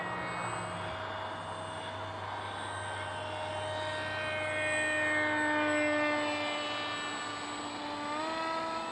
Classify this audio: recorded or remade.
recorded